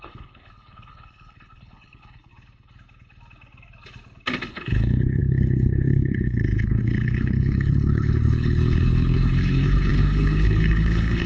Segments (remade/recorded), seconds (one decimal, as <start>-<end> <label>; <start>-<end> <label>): 0.0-2.3 remade; 2.3-4.5 recorded; 4.5-11.3 remade